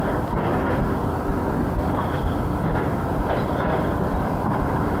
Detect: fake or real real